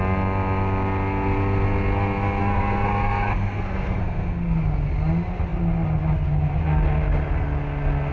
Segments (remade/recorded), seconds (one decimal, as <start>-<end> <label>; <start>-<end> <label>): 0.0-2.4 recorded; 2.4-4.6 remade; 4.6-8.1 recorded